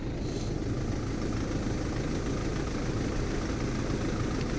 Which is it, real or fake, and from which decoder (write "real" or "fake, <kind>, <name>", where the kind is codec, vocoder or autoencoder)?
real